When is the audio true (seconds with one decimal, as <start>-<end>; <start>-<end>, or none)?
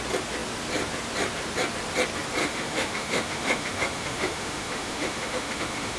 0.0-2.4